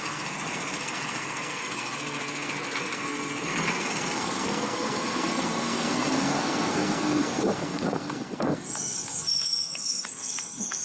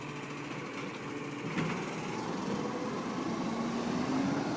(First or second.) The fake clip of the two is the first